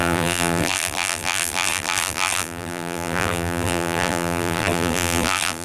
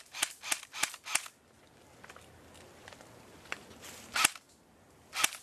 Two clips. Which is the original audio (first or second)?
second